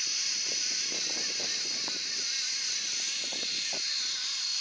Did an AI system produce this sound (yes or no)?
no